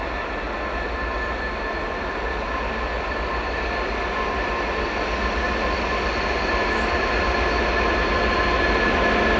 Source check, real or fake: real